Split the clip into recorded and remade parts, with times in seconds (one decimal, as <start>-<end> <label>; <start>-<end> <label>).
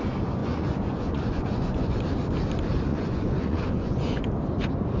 0.0-0.4 recorded; 0.4-2.0 remade; 2.0-2.9 recorded; 2.9-4.2 remade; 4.2-5.0 recorded